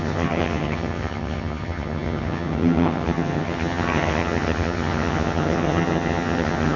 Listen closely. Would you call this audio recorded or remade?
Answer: remade